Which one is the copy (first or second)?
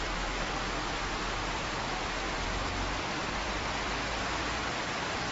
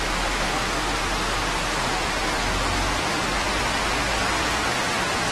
first